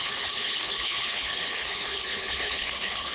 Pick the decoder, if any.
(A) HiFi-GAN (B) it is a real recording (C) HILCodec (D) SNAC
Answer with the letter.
C